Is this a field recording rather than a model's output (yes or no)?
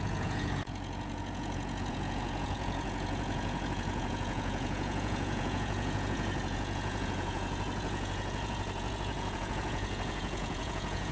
no